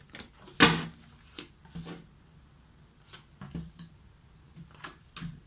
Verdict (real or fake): real